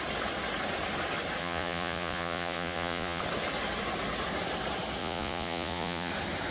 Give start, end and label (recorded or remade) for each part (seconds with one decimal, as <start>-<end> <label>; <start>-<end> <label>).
0.0-1.4 recorded; 1.4-3.2 remade; 3.2-5.0 recorded; 5.0-6.1 remade; 6.1-6.5 recorded